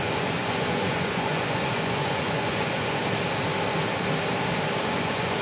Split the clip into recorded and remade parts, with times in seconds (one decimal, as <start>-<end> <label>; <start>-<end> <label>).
0.0-3.0 remade; 3.0-4.8 recorded; 4.8-5.4 remade